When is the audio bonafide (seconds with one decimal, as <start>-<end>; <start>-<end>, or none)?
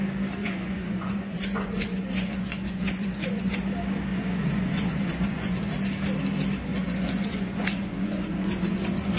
0.0-0.4; 3.5-4.1; 5.7-6.7